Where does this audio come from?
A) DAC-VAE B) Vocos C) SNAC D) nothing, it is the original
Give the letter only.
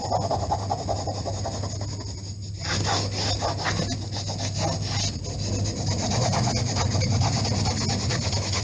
D